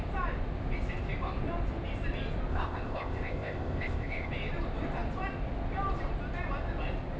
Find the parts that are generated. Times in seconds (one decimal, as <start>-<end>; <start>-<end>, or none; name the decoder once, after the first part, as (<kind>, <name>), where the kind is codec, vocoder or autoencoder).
2.5-4.3 (codec, ZipCodec)